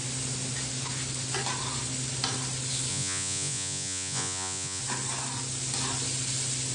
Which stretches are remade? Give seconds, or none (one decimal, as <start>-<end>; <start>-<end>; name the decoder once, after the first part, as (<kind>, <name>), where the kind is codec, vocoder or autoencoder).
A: 2.9-4.8 (vocoder, Vocos)